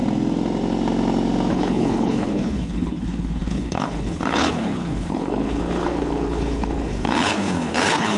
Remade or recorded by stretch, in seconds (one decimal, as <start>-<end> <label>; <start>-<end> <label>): 0.0-1.5 recorded; 1.5-8.2 remade